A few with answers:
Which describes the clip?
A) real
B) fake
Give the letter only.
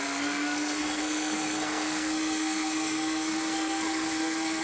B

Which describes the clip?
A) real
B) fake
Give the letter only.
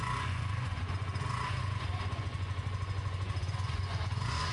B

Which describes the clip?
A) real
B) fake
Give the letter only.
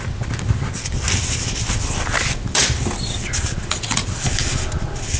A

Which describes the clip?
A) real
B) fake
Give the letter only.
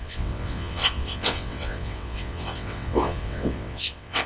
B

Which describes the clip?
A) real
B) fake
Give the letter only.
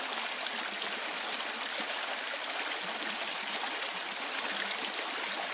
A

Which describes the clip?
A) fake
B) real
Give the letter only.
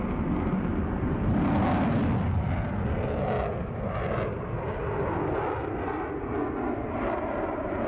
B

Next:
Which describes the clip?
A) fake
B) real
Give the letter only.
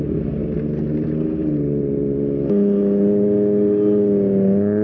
B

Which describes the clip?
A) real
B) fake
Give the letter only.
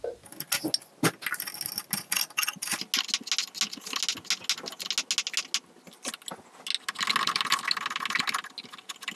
A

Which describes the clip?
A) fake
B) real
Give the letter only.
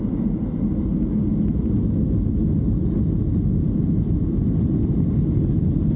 B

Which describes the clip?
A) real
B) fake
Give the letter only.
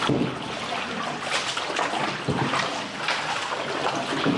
A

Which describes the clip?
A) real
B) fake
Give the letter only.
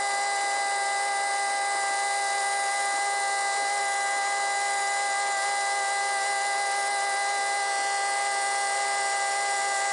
A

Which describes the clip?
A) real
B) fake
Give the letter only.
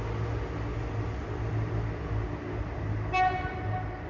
A